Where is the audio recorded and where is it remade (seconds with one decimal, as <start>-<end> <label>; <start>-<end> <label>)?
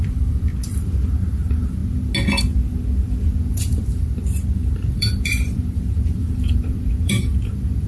0.0-0.5 remade; 0.5-1.1 recorded; 1.1-1.8 remade; 1.8-3.4 recorded; 3.4-7.9 remade